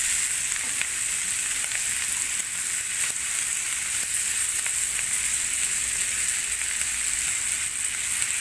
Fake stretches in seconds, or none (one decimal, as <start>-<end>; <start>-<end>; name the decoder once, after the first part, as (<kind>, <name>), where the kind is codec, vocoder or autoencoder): none